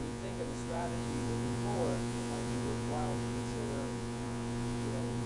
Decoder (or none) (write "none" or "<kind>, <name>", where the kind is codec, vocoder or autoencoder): vocoder, Vocos